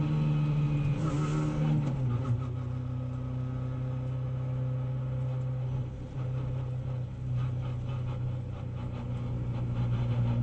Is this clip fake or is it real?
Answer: real